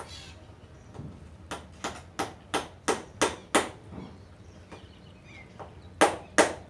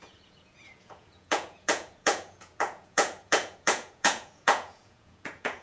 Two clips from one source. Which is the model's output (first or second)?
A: second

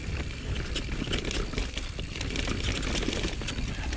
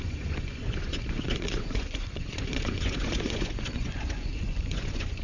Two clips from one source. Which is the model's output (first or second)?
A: second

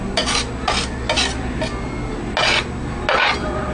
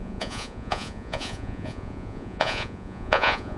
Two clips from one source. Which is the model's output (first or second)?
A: second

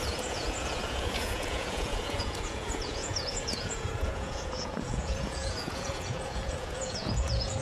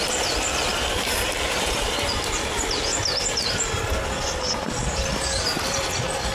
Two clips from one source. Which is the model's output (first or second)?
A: first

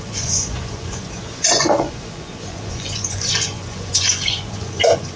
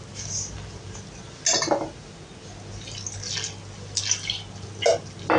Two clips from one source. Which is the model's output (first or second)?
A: first